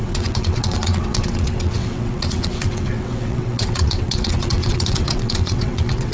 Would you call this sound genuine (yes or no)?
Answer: no